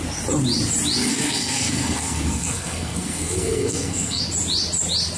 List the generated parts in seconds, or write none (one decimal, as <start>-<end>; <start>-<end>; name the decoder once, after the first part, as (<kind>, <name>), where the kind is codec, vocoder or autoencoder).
1.1-4.2 (codec, SNAC)